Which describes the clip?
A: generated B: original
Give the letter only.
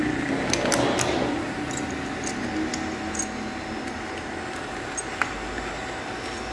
B